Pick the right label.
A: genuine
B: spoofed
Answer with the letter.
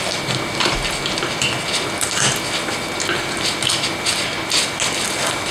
A